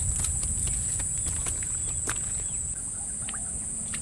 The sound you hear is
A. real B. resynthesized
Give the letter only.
B